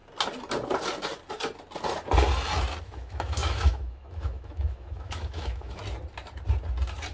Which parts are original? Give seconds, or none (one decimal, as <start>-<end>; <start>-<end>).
0.0-2.8; 5.8-7.1